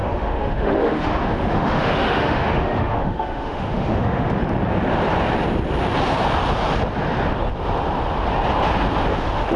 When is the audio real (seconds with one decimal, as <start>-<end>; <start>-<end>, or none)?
4.4-9.2